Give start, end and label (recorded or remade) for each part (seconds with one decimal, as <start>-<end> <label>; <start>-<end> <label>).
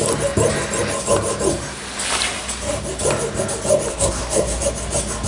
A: 0.0-3.9 recorded; 3.9-4.6 remade; 4.6-5.3 recorded